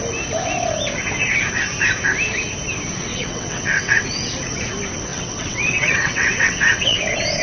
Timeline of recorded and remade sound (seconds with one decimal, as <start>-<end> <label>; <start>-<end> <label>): 0.0-3.1 recorded; 3.1-4.0 remade; 4.0-5.1 recorded; 5.1-7.0 remade; 7.0-7.4 recorded